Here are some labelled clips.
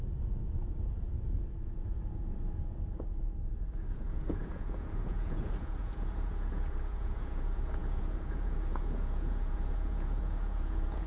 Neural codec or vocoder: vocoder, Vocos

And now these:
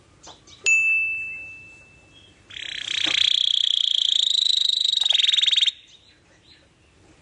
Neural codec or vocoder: none